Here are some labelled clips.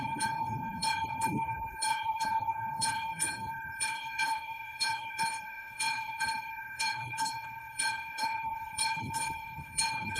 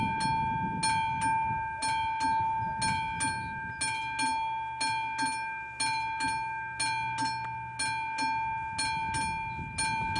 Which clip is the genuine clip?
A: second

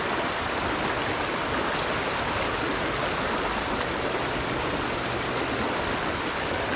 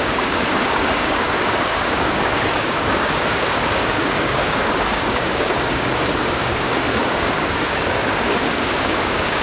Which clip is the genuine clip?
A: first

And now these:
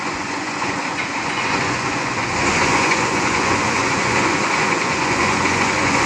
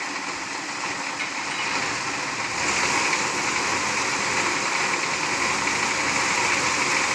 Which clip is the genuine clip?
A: second